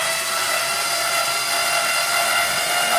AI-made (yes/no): no